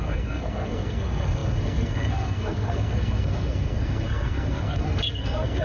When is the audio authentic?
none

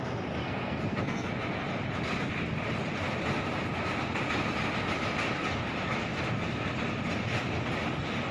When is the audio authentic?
0.0-0.4; 1.3-8.3

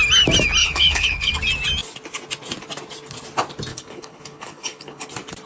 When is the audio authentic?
0.0-0.6; 1.3-3.7; 5.1-5.5

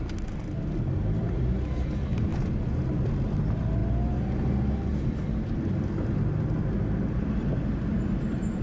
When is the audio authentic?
0.0-8.6

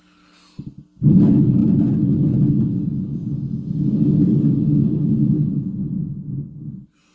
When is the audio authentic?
0.0-5.8; 6.5-7.1